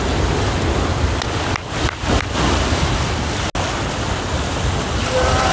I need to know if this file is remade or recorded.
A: recorded